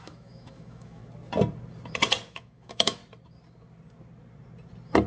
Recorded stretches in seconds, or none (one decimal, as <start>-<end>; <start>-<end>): 1.0-2.3; 3.0-5.1